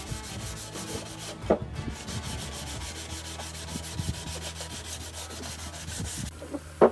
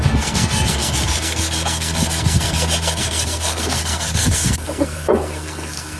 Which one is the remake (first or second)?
second